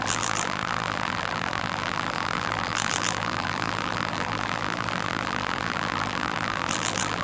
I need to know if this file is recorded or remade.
remade